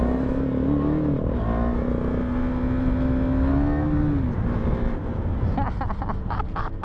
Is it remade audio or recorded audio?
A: recorded